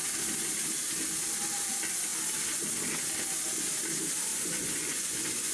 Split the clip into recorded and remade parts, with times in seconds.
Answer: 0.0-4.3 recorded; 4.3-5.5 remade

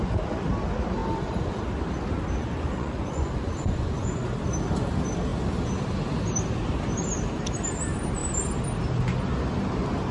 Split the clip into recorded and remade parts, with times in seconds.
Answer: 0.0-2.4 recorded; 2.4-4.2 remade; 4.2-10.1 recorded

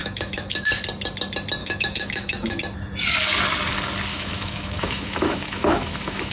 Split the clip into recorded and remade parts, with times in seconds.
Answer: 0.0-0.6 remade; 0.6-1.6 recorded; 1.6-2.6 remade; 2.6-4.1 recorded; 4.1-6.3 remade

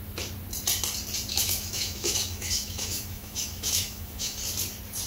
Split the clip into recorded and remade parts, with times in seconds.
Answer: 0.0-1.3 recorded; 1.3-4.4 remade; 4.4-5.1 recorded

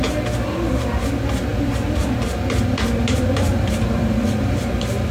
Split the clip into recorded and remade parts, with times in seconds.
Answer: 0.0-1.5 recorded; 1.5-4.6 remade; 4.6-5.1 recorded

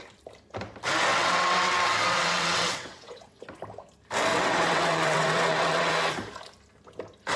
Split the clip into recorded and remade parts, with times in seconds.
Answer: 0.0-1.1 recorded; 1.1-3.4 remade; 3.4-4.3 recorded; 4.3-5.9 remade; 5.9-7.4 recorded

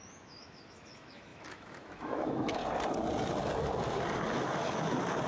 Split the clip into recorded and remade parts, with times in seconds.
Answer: 0.0-2.6 remade; 2.6-5.3 recorded

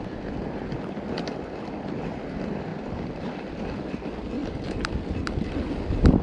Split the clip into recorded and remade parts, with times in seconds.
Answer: 0.0-2.7 recorded; 2.7-3.6 remade; 3.6-6.2 recorded